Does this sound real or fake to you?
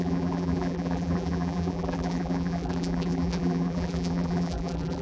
fake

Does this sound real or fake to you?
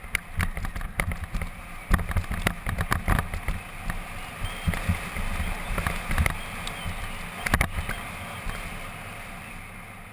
real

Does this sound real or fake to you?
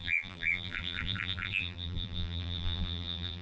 fake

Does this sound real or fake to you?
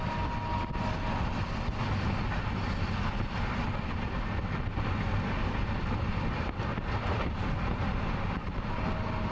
real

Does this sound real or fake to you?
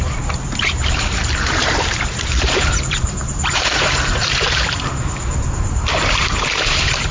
fake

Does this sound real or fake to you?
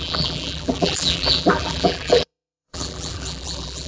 fake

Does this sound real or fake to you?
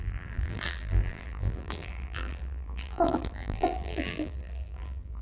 fake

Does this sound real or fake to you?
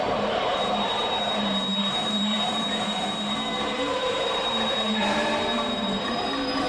fake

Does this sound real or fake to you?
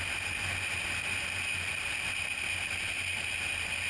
real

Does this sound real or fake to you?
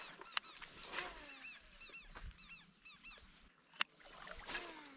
real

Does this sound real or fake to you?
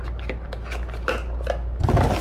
real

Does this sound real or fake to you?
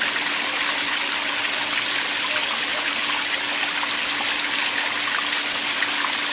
real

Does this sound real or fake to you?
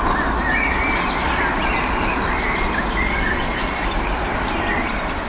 fake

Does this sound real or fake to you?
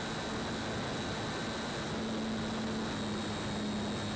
real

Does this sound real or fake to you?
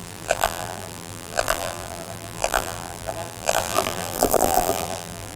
fake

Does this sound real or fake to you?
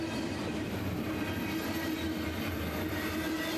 fake